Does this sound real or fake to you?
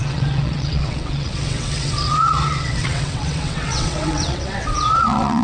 fake